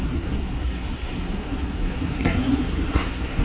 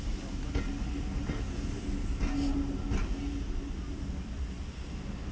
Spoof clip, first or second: first